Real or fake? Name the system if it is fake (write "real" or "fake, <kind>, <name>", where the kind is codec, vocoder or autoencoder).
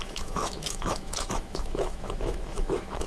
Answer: fake, autoencoder, DAC-VAE